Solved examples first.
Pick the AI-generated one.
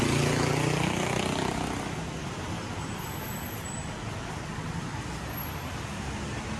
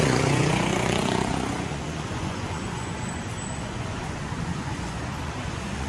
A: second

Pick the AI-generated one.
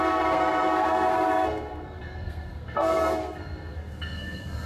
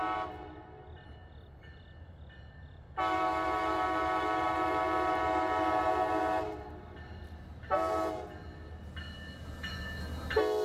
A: first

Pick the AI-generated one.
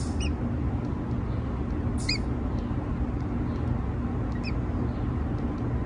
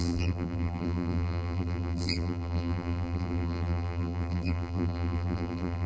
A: second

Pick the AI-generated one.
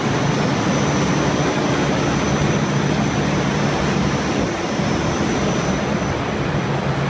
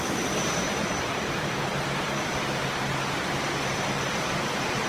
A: second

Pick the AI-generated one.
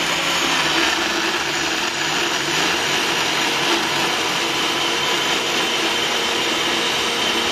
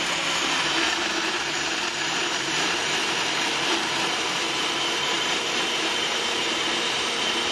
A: second